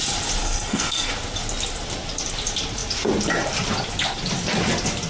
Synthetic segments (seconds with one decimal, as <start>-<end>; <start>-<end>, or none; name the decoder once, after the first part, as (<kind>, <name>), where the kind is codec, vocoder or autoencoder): 0.4-1.1 (codec, SNAC)